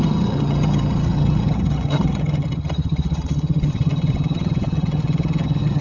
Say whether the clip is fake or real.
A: fake